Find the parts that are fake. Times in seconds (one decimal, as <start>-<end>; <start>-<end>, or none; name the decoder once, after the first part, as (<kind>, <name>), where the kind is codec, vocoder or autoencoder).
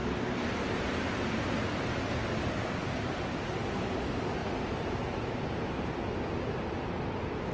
4.4-5.9 (vocoder, BigVGAN v2)